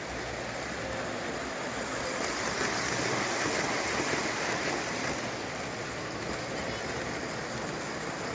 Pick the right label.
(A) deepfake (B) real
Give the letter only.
B